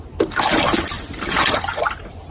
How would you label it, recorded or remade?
recorded